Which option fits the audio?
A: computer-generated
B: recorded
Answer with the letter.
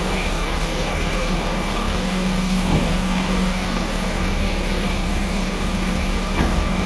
A